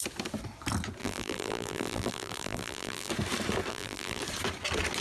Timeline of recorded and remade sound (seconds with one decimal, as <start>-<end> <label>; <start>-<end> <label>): 0.0-1.0 recorded; 1.0-3.1 remade; 3.1-3.7 recorded; 3.7-4.2 remade; 4.2-5.0 recorded